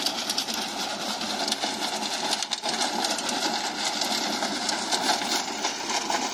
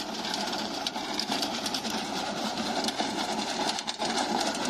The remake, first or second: second